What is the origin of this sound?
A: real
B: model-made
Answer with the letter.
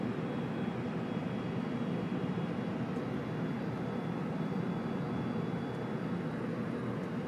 A